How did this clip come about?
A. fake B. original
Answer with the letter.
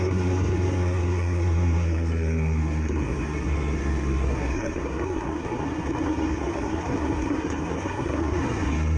A